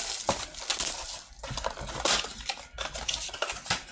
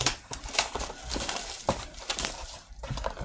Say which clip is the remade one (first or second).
second